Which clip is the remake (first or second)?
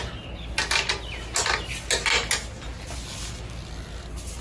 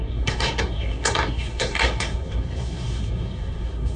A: second